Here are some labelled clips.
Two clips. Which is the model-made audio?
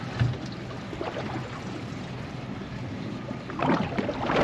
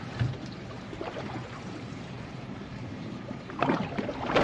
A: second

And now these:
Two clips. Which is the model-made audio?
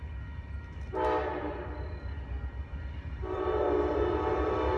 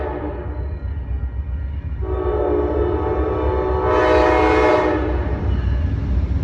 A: first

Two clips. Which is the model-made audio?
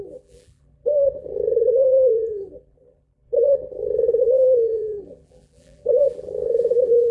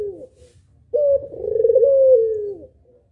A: first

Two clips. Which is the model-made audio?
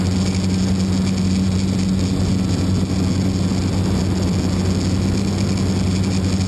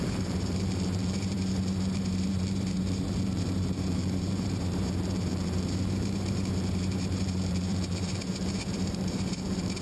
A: second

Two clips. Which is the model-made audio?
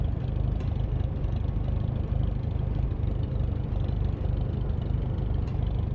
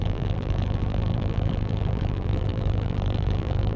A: second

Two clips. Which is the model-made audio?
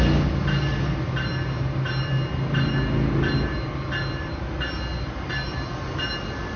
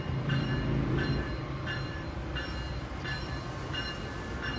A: second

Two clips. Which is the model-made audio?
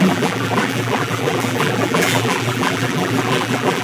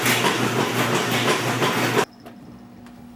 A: first